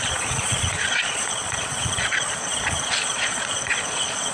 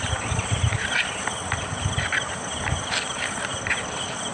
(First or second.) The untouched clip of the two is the second